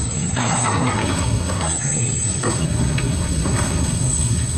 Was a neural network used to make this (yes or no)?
yes